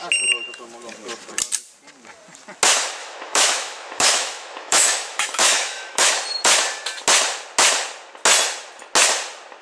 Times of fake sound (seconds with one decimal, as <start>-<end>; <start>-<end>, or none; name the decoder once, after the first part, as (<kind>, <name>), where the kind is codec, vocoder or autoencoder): 3.0-6.1 (autoencoder, DAC-VAE)